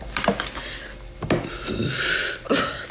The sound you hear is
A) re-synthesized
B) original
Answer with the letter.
B